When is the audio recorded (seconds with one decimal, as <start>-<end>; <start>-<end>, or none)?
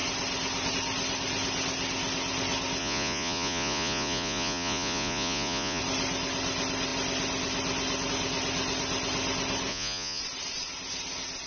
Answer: 0.0-2.8; 5.8-9.7; 10.2-11.5